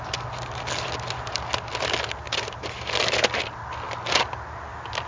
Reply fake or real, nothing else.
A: real